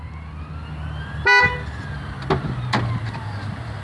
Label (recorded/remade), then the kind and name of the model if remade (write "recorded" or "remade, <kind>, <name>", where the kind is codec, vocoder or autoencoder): recorded